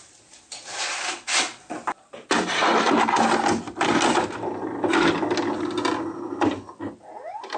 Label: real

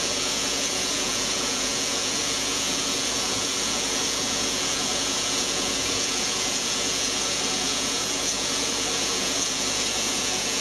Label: fake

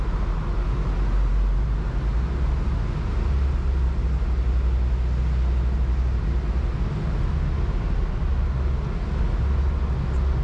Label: real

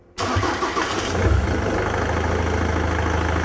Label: real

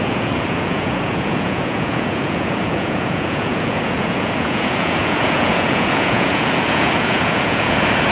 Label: fake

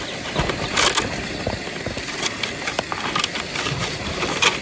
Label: real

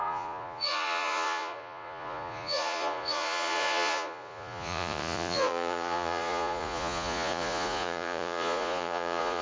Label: fake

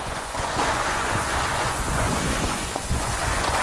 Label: fake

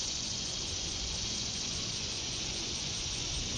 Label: fake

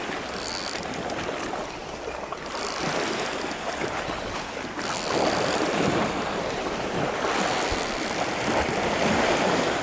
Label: real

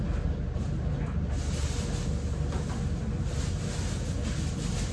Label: real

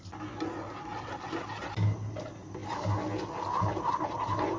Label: real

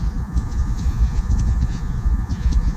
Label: fake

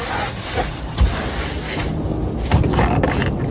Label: real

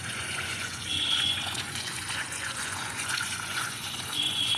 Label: fake